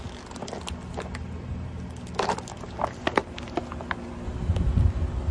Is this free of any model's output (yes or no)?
yes